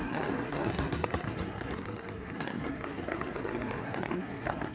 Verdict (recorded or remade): remade